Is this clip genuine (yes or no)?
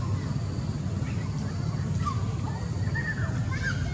yes